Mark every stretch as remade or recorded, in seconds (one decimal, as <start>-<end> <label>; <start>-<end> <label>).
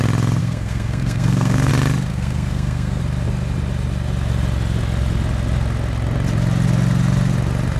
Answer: 0.0-0.4 recorded; 0.4-1.7 remade; 1.7-2.1 recorded; 2.1-3.0 remade; 3.0-7.8 recorded